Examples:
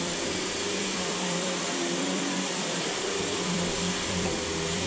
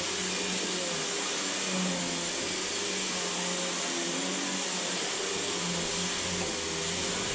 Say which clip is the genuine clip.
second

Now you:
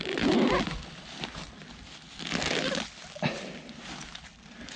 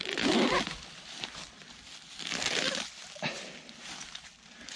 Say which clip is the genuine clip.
first